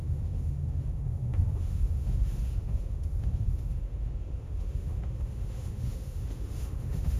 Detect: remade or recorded remade